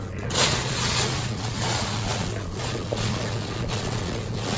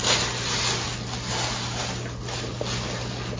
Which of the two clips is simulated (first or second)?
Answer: first